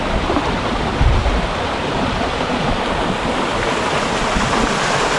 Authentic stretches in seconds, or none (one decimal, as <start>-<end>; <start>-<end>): 0.0-1.8; 3.7-5.2